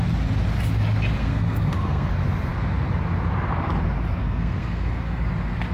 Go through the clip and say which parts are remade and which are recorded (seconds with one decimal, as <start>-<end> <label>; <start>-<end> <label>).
0.0-1.2 recorded; 1.2-2.1 remade; 2.1-4.2 recorded; 4.2-5.3 remade; 5.3-5.7 recorded